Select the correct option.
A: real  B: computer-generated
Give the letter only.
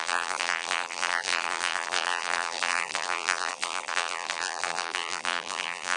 B